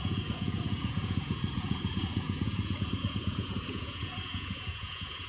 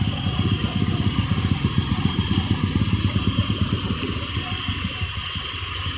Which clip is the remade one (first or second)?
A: first